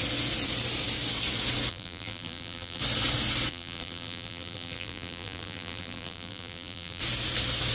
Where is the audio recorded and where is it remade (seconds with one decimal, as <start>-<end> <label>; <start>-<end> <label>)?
0.0-1.7 recorded; 1.7-2.8 remade; 2.8-3.5 recorded; 3.5-7.0 remade; 7.0-7.7 recorded